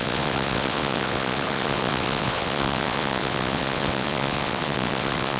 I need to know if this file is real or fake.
fake